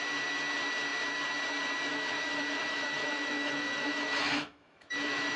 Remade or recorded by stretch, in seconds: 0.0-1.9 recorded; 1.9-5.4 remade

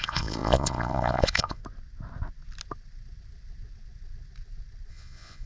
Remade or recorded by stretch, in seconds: 0.0-1.6 remade; 1.6-4.9 recorded; 4.9-5.5 remade

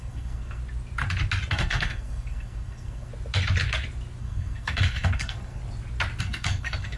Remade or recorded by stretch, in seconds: 0.0-0.6 remade; 0.6-1.5 recorded; 1.5-3.1 remade; 3.1-4.2 recorded; 4.2-5.6 remade; 5.6-6.2 recorded; 6.2-7.0 remade

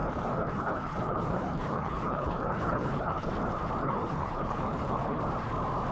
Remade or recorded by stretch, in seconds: 0.0-3.3 remade; 3.3-3.8 recorded; 3.8-5.2 remade; 5.2-5.9 recorded

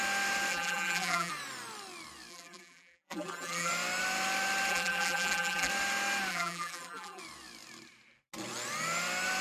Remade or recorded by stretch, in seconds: 0.0-0.5 recorded; 0.5-1.3 remade; 1.3-2.3 recorded; 2.3-3.7 remade; 3.7-4.7 recorded; 4.7-5.7 remade; 5.7-6.3 recorded; 6.3-7.2 remade; 7.2-9.4 recorded

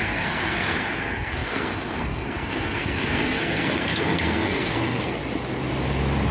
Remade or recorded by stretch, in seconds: 0.0-5.2 remade; 5.2-6.3 recorded

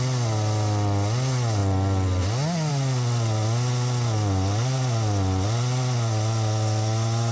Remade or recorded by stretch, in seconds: 0.0-7.3 recorded

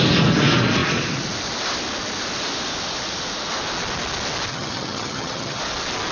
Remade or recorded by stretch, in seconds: 0.0-4.5 recorded; 4.5-5.6 remade; 5.6-6.1 recorded